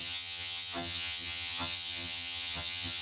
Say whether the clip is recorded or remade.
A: remade